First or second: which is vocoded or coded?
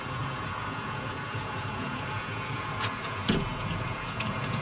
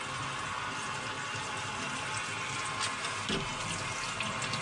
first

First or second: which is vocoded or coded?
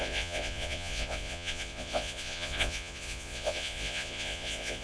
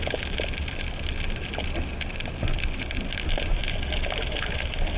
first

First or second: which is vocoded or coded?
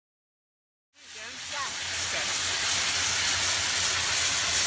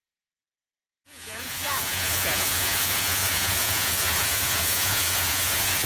second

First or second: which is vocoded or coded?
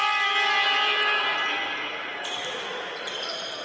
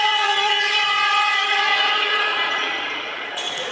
second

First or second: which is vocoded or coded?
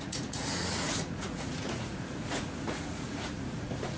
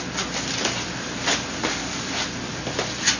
first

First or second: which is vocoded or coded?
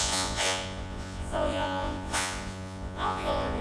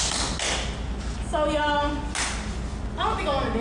first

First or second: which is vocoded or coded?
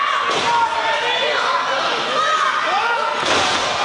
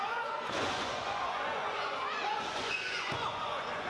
second